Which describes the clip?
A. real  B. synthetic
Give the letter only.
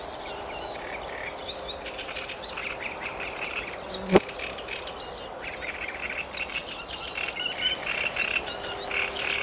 A